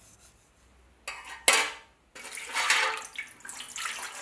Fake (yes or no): no